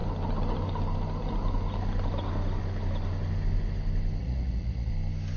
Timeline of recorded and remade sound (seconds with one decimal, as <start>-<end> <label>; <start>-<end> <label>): 0.0-4.2 recorded; 4.2-4.9 remade; 4.9-5.4 recorded